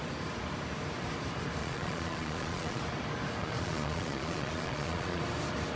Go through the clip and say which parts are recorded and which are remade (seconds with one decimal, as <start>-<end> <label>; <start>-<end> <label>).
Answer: 0.0-1.6 recorded; 1.6-2.8 remade; 2.8-3.4 recorded; 3.4-5.2 remade; 5.2-5.8 recorded